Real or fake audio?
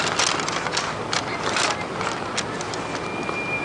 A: real